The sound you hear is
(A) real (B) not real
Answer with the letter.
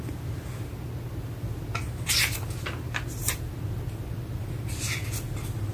A